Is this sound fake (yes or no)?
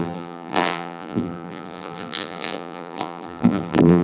yes